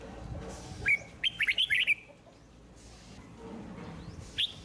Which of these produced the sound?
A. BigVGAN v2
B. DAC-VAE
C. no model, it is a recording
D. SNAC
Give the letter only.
C